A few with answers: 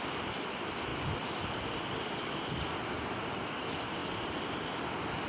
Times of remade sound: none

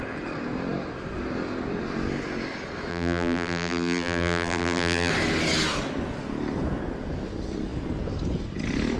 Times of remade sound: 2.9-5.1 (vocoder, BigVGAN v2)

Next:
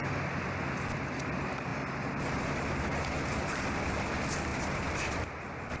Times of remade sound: 4.5-5.1 (vocoder, BigVGAN v2)

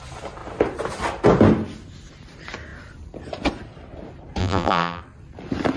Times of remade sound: 4.4-5.0 (vocoder, BigVGAN v2)

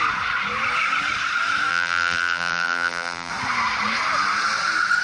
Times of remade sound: 1.7-3.3 (vocoder, BigVGAN v2)